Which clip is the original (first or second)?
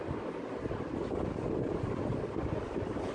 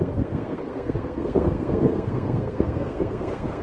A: first